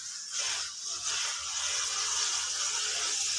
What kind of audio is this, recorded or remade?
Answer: recorded